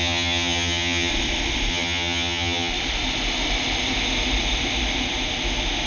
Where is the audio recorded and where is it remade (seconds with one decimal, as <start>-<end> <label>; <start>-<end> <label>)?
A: 0.0-1.1 remade; 1.1-1.7 recorded; 1.7-2.7 remade; 2.7-5.9 recorded